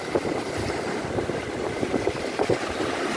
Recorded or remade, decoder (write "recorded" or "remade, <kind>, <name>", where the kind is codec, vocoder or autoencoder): recorded